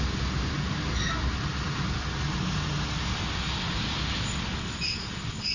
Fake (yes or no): no